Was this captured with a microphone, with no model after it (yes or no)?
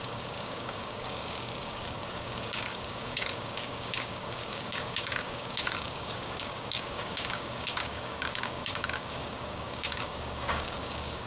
no